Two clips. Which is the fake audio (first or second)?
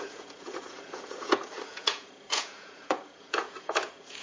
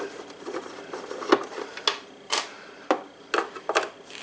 first